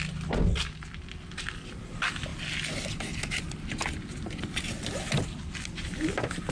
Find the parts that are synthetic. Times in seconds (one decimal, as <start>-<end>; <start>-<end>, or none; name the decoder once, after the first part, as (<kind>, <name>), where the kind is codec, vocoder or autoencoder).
none